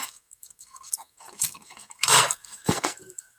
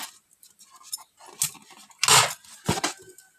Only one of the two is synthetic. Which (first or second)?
first